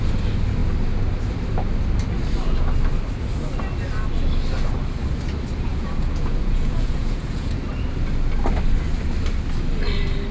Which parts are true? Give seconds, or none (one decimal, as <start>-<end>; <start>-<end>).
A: 0.0-5.7; 7.6-10.3